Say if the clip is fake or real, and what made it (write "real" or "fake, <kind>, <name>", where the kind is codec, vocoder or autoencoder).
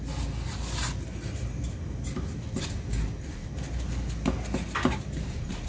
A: real